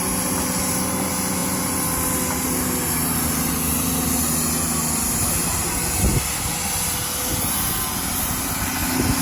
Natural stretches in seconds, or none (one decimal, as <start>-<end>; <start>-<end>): 0.0-9.2